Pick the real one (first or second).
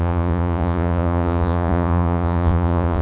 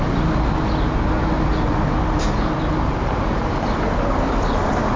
second